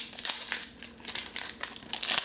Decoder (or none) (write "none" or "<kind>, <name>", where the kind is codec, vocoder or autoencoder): none